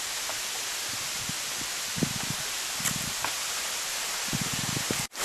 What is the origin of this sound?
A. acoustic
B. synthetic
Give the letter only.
B